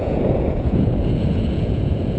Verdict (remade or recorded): remade